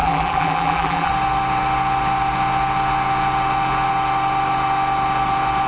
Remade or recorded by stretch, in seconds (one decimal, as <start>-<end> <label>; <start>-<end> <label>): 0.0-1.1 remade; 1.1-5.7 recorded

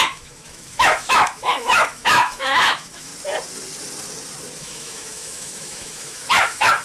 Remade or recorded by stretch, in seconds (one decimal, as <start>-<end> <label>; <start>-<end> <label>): 0.0-3.1 remade; 3.1-4.6 recorded; 4.6-6.8 remade

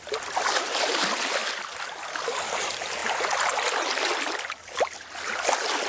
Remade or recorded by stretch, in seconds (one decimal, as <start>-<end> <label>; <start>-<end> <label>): 0.0-5.9 recorded

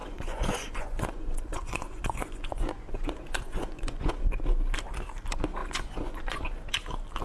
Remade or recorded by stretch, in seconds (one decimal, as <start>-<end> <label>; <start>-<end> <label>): 0.0-4.2 remade; 4.2-5.6 recorded; 5.6-6.4 remade; 6.4-7.2 recorded

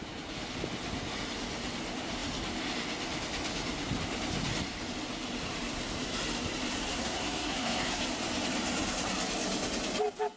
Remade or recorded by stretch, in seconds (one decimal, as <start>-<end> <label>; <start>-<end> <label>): 0.0-6.9 recorded; 6.9-8.0 remade; 8.0-10.4 recorded